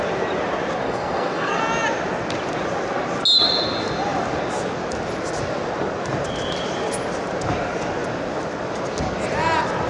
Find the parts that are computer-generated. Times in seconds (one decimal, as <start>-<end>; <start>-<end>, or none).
0.8-1.6